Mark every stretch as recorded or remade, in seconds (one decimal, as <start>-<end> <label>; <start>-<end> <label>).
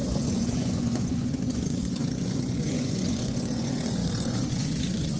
0.0-5.2 remade